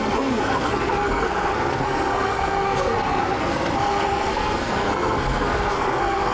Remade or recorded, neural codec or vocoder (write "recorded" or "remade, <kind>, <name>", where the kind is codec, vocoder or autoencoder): remade, codec, SNAC